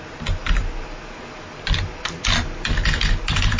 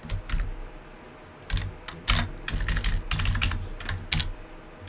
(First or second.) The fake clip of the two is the first